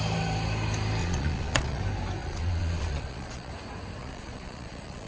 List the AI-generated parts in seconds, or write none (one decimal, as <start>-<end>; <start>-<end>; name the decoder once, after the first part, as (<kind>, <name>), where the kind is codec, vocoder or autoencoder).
1.0-1.8 (vocoder, Vocos); 2.2-3.5; 4.0-5.1